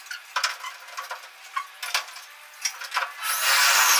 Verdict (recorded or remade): recorded